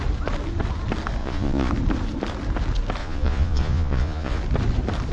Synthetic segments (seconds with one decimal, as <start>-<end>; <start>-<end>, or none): 1.2-1.7; 3.0-4.4